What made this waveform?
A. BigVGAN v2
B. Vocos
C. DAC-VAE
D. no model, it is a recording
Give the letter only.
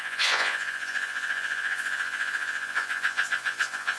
B